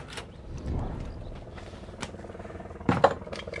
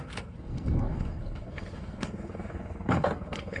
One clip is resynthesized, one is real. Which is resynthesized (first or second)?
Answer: second